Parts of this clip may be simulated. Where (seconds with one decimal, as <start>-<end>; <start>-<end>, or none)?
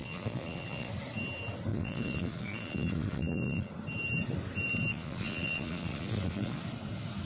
0.0-0.9; 1.7-3.7; 4.9-6.6